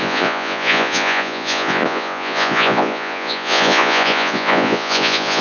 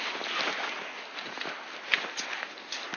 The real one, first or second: second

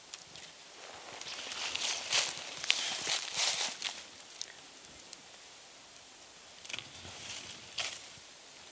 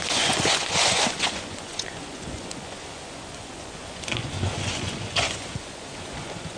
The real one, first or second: first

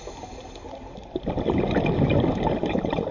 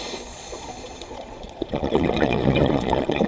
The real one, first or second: first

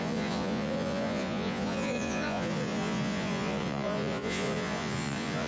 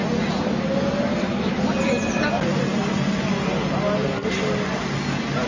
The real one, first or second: second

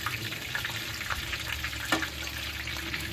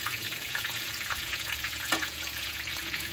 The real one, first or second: first